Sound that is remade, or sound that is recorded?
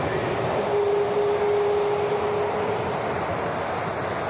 recorded